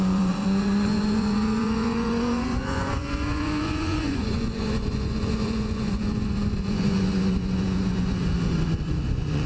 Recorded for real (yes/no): no